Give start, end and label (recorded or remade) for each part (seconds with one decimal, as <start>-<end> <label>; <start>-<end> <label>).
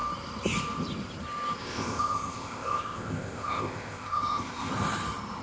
0.0-1.6 recorded; 1.6-4.7 remade; 4.7-5.4 recorded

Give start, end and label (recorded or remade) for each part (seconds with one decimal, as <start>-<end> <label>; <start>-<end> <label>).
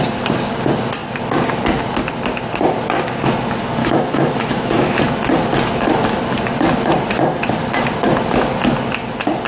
0.0-3.8 recorded; 3.8-5.0 remade; 5.0-9.5 recorded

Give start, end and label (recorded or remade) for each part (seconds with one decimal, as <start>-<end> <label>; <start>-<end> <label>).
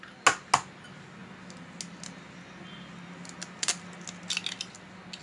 0.0-5.2 recorded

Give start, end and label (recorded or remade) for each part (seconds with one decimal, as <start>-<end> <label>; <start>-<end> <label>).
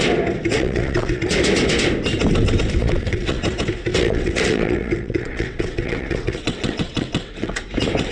0.0-0.5 recorded; 0.5-1.2 remade; 1.2-2.8 recorded; 2.8-3.4 remade; 3.4-3.9 recorded; 3.9-7.6 remade; 7.6-8.1 recorded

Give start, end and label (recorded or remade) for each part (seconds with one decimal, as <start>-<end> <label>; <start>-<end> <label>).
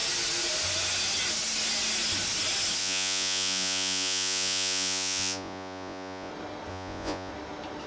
0.0-2.8 recorded; 2.8-6.3 remade; 6.3-6.7 recorded; 6.7-7.3 remade; 7.3-7.9 recorded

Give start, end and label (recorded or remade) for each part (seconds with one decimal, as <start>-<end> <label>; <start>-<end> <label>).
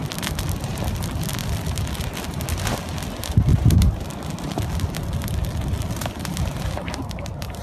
0.0-3.5 recorded; 3.5-4.1 remade; 4.1-7.6 recorded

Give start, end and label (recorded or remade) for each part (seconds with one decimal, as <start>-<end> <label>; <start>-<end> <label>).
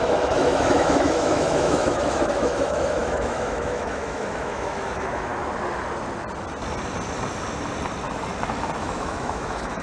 0.0-5.3 remade; 5.3-8.8 recorded; 8.8-9.8 remade